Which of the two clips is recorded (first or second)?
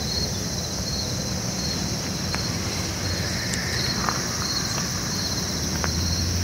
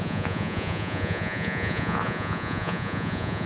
first